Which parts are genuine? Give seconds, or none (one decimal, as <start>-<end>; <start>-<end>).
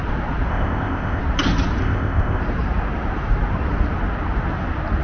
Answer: 0.0-0.5; 1.2-1.8; 2.4-5.0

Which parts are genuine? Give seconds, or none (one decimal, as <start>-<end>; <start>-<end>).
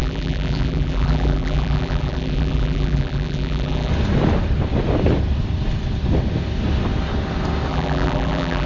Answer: 3.9-7.7